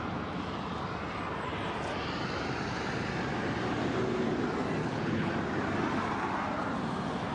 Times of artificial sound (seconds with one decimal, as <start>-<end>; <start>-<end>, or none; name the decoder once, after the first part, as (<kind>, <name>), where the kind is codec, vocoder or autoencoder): 4.8-5.3 (codec, HILCodec)